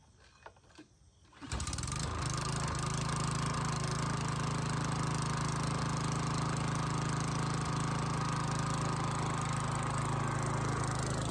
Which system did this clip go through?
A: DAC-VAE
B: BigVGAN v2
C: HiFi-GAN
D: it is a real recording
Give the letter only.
D